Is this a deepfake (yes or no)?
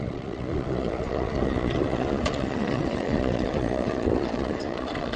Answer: yes